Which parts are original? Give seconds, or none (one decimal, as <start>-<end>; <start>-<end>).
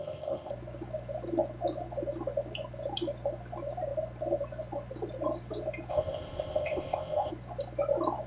0.5-5.9; 7.3-8.3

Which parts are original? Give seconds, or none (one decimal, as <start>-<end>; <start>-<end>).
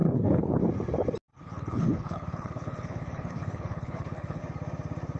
0.6-1.3; 4.4-5.2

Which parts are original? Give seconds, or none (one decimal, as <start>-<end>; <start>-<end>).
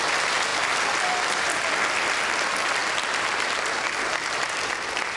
0.0-2.8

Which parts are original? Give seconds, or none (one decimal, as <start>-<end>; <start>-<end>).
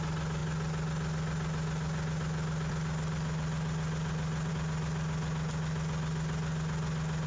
0.0-7.3